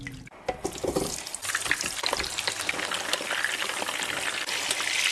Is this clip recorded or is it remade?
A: recorded